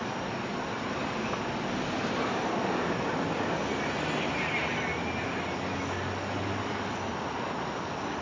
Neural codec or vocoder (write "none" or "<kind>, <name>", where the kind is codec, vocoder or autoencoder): none